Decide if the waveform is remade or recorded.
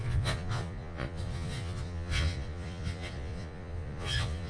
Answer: remade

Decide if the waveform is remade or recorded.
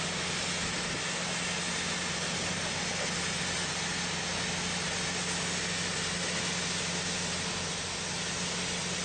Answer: recorded